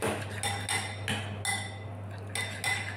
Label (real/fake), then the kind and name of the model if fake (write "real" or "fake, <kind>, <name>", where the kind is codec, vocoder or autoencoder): real